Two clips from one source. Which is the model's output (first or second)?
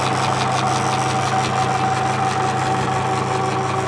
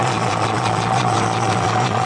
second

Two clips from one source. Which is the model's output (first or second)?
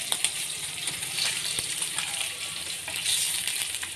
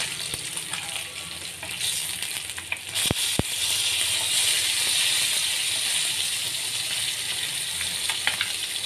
first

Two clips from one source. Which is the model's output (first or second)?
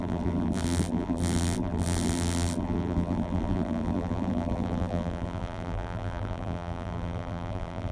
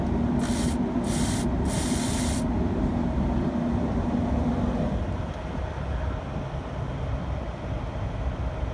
first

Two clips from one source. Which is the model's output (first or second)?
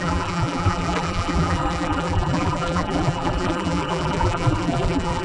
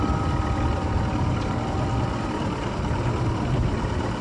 first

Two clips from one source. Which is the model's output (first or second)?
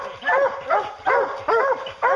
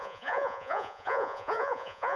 second